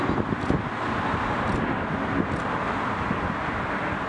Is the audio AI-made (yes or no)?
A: no